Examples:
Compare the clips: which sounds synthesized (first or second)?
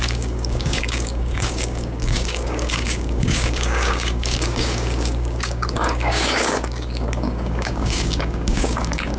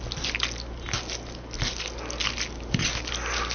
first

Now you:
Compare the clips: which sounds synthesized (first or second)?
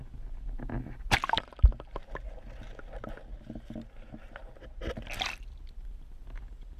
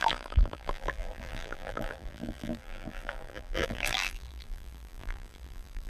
second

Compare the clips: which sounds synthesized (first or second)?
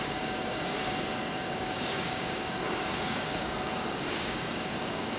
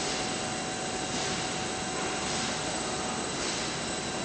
first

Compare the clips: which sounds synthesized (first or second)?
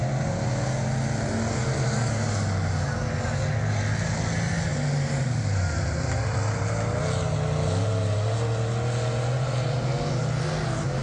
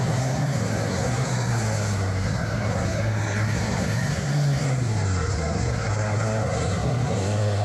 second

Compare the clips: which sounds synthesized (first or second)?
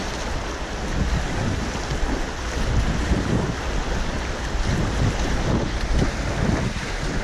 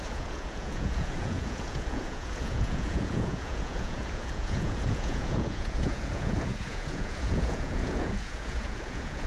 second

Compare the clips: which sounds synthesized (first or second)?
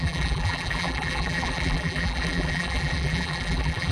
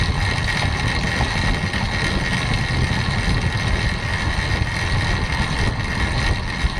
first